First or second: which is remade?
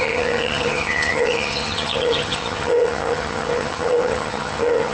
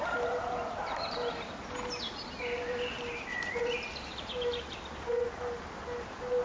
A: first